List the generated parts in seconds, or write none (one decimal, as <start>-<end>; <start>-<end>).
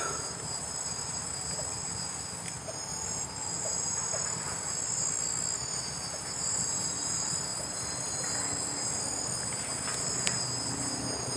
none